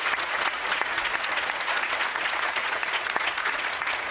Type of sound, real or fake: fake